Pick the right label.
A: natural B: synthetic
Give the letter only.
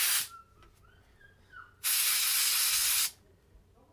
A